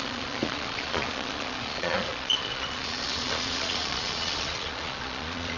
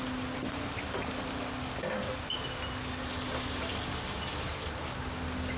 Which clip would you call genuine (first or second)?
second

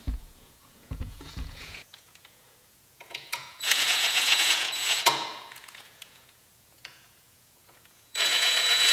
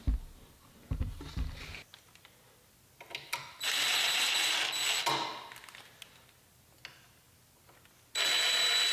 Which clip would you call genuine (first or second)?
second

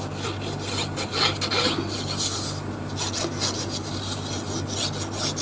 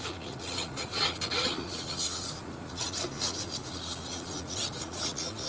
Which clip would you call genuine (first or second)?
first